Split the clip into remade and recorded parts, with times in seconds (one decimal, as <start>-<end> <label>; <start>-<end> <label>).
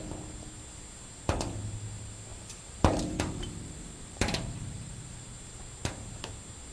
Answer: 0.0-2.3 recorded; 2.3-5.2 remade; 5.2-6.7 recorded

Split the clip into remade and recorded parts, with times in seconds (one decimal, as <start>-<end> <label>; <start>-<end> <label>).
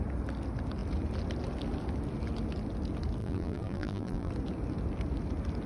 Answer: 0.0-3.2 recorded; 3.2-4.3 remade; 4.3-5.7 recorded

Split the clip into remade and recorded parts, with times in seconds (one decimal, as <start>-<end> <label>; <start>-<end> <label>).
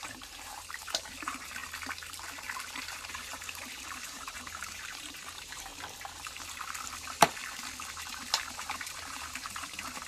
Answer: 0.0-1.6 remade; 1.6-2.5 recorded; 2.5-5.7 remade; 5.7-8.6 recorded; 8.6-10.1 remade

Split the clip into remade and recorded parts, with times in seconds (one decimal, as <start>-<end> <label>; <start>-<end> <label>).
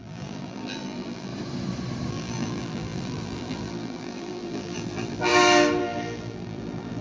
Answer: 0.0-1.3 remade; 1.3-2.1 recorded; 2.1-5.3 remade; 5.3-5.8 recorded; 5.8-7.0 remade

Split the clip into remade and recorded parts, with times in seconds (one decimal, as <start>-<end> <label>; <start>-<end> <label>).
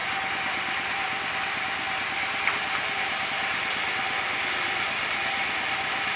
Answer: 0.0-6.2 recorded